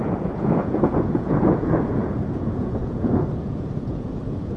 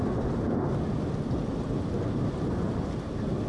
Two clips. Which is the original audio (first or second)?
second